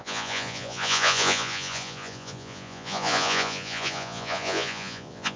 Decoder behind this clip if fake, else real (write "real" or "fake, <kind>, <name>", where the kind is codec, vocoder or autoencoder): fake, vocoder, Vocos